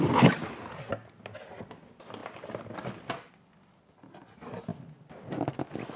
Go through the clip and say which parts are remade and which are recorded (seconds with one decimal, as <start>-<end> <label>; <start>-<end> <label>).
0.0-6.0 recorded